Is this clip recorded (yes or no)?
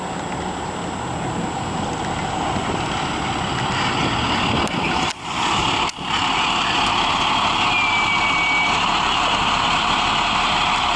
yes